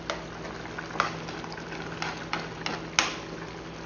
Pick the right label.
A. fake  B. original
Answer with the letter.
B